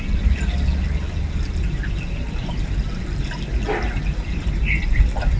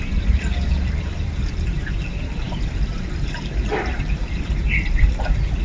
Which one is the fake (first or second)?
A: second